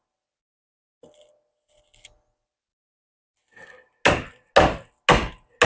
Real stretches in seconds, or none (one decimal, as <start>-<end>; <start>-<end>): 0.0-5.6

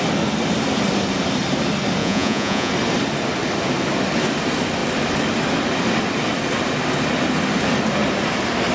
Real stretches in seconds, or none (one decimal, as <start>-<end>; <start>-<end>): 0.0-2.0; 2.7-8.7